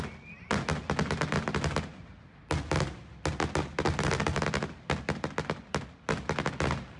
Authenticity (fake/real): real